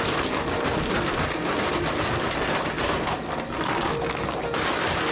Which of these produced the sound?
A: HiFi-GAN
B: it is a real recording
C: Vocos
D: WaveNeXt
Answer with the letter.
B